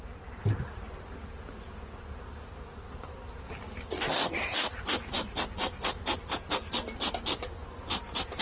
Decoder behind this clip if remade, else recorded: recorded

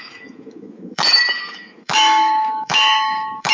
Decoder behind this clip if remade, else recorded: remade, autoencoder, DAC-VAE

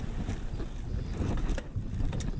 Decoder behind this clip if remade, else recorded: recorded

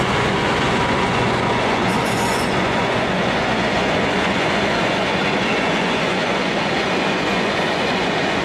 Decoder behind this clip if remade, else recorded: remade, vocoder, Vocos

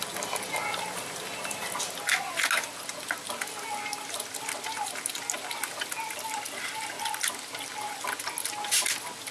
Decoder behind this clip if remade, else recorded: recorded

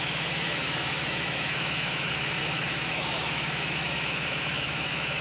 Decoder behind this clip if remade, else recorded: remade, autoencoder, DAC-VAE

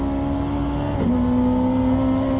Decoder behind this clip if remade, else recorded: recorded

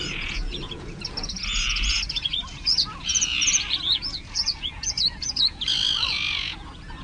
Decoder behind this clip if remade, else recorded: remade, vocoder, Vocos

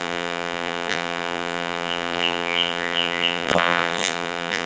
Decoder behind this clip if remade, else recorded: remade, vocoder, BigVGAN v2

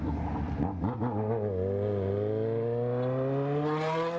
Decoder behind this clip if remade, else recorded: recorded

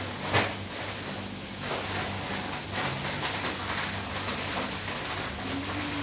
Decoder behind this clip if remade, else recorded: recorded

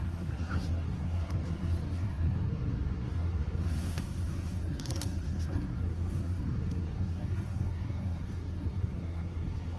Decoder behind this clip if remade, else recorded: remade, codec, SNAC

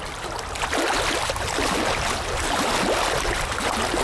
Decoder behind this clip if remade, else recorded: recorded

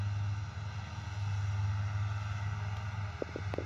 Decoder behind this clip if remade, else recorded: recorded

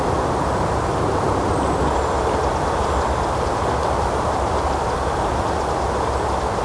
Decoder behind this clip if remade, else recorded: recorded